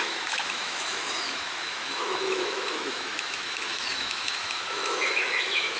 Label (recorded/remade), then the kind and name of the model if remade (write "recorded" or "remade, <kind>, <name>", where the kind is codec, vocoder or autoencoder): remade, autoencoder, DAC-VAE